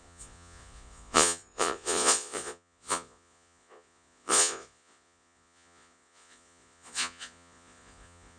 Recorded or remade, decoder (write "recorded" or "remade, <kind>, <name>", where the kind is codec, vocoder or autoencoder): remade, vocoder, Vocos